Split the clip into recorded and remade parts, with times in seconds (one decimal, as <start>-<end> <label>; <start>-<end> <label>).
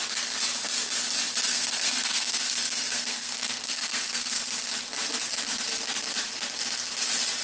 0.0-1.5 recorded; 1.5-4.4 remade; 4.4-7.4 recorded